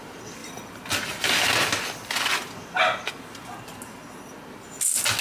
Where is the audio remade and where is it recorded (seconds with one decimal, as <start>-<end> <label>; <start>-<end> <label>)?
0.0-5.2 recorded